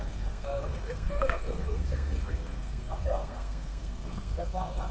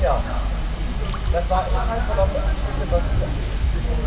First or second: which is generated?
first